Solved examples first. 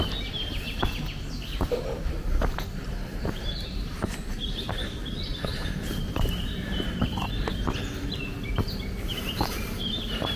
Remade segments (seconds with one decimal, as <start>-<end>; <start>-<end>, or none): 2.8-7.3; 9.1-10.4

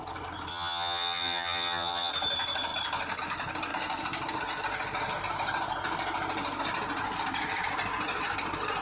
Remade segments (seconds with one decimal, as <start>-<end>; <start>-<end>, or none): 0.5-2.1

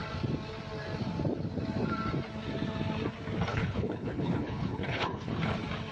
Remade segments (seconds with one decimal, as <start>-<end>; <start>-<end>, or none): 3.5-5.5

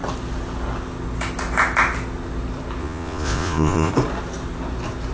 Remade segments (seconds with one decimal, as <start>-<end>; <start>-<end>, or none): 2.8-3.9

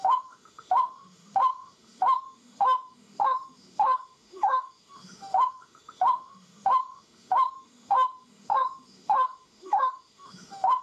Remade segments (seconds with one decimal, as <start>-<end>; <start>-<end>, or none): 0.0-10.8